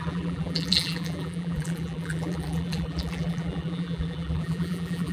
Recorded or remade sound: remade